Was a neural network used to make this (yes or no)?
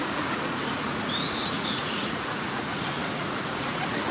yes